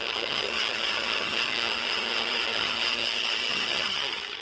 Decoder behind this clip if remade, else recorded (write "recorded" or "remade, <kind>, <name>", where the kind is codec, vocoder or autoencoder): remade, vocoder, HiFi-GAN